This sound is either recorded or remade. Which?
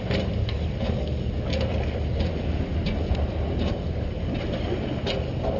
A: recorded